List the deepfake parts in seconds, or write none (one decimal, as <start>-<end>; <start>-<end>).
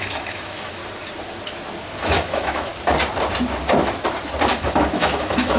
0.0-0.8; 2.0-2.7; 4.5-5.6